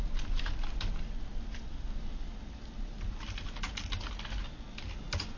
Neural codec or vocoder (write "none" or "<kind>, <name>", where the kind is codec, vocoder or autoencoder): none